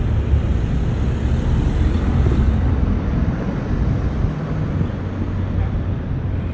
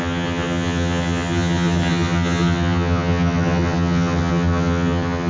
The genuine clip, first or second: first